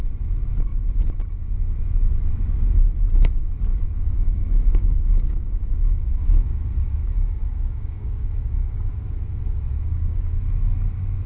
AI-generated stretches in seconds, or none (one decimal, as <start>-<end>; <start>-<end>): 3.7-6.5; 7.0-8.9; 9.7-10.4